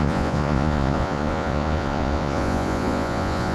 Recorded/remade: remade